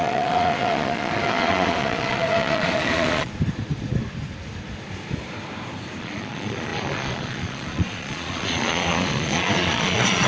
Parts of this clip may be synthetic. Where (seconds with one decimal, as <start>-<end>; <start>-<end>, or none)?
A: 0.0-3.3; 6.0-10.3